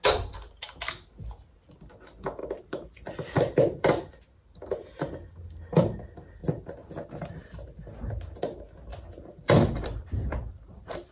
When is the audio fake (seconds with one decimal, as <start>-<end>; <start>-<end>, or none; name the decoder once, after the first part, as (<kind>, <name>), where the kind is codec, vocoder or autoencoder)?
2.4-4.1 (vocoder, BigVGAN v2); 8.9-11.1